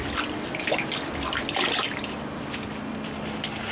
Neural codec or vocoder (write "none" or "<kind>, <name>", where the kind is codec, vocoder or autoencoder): none